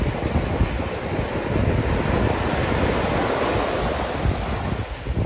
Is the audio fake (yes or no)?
no